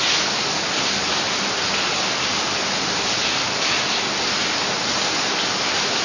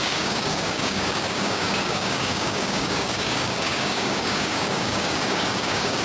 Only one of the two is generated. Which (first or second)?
second